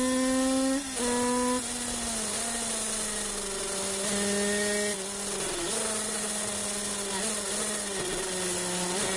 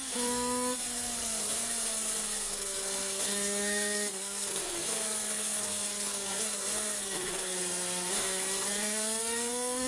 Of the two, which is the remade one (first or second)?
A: second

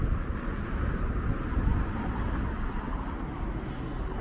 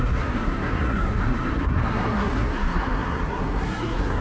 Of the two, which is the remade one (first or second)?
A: second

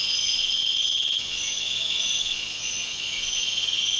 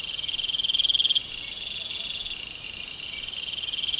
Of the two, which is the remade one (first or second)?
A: first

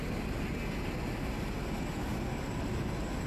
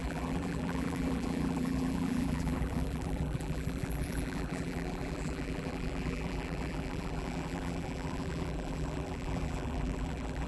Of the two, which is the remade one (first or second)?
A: second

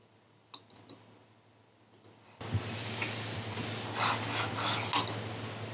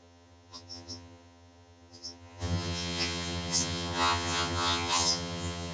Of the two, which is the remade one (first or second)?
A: second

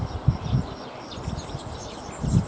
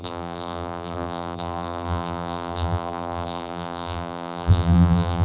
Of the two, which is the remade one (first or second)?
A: second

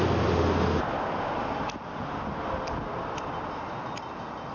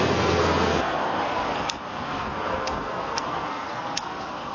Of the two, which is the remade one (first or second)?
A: second